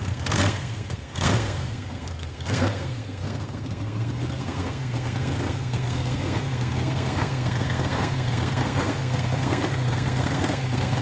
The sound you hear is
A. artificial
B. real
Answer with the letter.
A